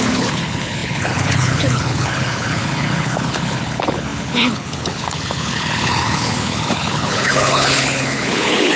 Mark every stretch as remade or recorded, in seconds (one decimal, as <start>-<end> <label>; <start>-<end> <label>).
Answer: 0.0-8.8 remade